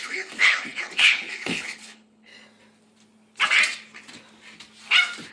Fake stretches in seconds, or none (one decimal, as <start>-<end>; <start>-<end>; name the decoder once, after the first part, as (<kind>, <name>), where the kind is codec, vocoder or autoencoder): 0.0-2.3 (codec, HILCodec)